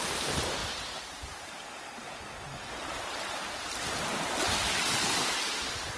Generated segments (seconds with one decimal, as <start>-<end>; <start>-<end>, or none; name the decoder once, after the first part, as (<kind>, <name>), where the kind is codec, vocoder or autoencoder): none